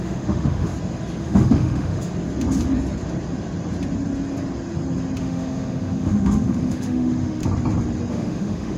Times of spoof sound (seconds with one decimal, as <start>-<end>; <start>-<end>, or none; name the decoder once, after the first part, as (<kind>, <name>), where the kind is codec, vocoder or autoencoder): 0.0-0.7 (autoencoder, DAC-VAE); 1.2-2.1; 5.2-7.4; 8.1-8.8